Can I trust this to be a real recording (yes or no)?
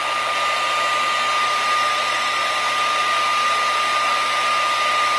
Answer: yes